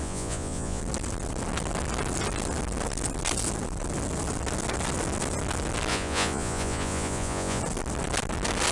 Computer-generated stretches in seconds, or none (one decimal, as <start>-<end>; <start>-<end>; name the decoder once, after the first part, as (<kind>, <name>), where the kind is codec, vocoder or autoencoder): 0.0-0.8 (vocoder, Vocos); 5.9-7.6